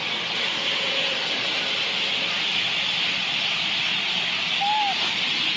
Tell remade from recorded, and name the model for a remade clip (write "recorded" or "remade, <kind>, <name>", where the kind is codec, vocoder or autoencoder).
recorded